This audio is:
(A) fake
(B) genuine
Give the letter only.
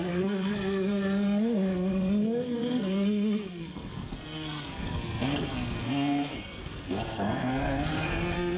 A